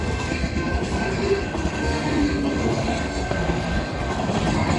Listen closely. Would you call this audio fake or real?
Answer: fake